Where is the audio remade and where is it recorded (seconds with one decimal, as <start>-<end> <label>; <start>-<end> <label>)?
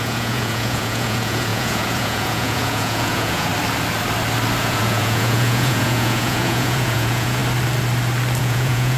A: 0.0-3.5 remade; 3.5-4.6 recorded; 4.6-7.4 remade; 7.4-8.4 recorded; 8.4-9.0 remade